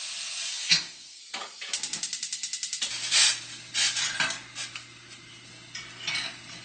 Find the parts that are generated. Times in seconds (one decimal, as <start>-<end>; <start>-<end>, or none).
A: 0.5-1.2